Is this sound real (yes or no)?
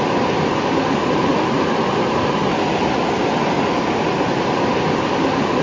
yes